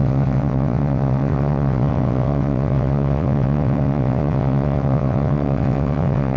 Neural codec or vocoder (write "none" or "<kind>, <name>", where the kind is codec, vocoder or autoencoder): vocoder, WaveNeXt